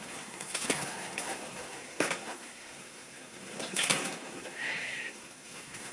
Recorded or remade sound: remade